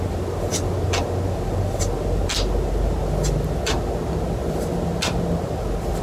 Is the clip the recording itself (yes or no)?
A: yes